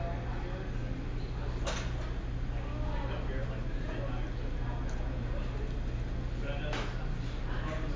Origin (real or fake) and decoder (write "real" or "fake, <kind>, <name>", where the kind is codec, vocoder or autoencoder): real